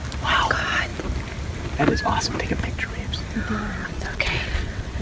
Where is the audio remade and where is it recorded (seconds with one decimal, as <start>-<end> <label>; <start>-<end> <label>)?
0.0-3.8 recorded; 3.8-5.0 remade